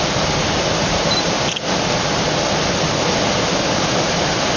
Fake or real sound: real